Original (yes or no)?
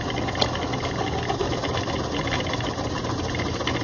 yes